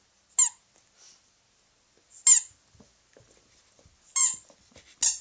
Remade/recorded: recorded